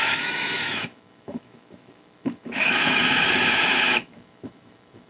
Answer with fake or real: fake